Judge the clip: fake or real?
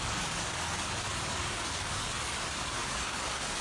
fake